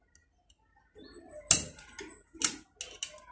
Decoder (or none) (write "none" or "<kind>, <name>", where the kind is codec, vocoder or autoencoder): none